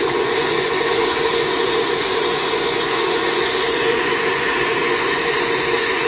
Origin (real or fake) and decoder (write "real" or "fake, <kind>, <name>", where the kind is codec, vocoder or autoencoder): fake, vocoder, Vocos